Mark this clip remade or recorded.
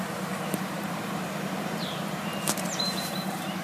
remade